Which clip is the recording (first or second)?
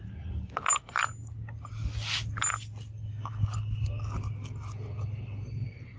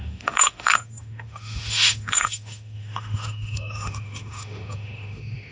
first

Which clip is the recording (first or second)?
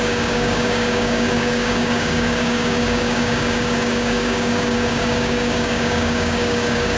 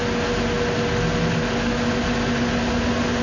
second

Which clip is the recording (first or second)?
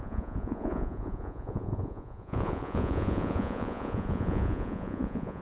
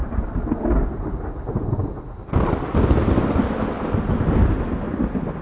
second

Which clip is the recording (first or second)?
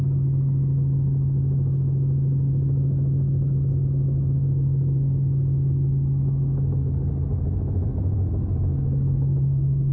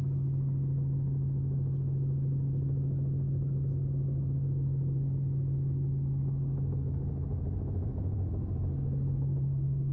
second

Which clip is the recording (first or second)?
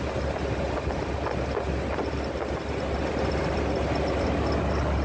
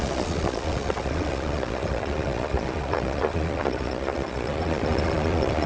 first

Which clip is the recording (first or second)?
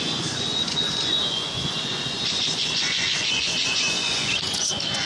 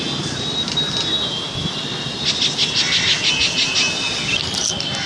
second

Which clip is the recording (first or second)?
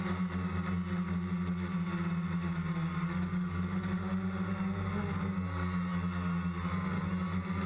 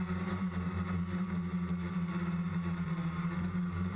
first